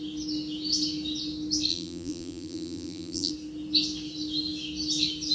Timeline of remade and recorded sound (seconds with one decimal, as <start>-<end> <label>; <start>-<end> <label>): 0.0-1.7 recorded; 1.7-3.3 remade; 3.3-5.3 recorded